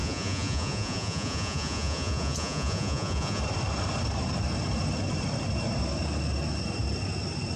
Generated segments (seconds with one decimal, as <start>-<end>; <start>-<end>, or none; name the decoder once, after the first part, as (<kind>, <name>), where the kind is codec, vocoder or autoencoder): 0.0-3.4 (vocoder, Vocos)